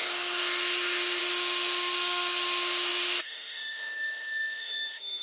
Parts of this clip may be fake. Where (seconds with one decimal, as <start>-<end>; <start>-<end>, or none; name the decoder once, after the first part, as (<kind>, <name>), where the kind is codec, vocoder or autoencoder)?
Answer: 0.0-5.2 (autoencoder, DAC-VAE)